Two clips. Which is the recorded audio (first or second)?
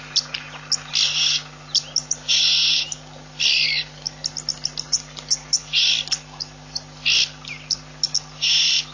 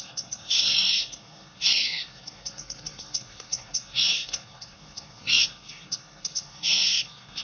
first